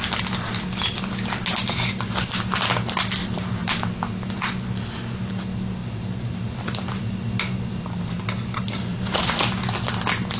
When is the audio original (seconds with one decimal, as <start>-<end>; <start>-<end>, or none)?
0.0-3.2; 3.7-5.8; 7.0-8.9; 9.5-10.4